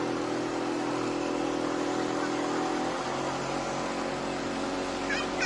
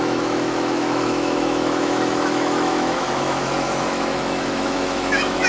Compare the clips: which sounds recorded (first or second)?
first